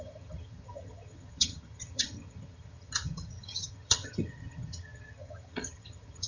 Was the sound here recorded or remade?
remade